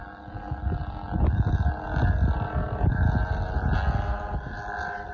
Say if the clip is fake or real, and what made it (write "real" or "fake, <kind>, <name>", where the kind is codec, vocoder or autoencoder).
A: real